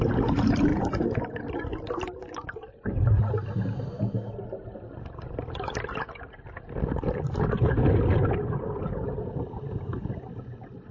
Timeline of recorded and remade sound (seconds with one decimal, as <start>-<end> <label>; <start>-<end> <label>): 0.0-10.9 recorded